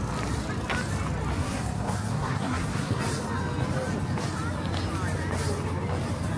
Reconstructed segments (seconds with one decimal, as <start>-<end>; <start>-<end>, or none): 1.4-3.0